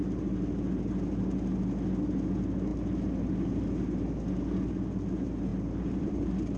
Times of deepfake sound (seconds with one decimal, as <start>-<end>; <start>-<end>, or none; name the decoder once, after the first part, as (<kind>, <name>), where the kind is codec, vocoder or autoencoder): 5.5-6.6 (vocoder, BigVGAN v2)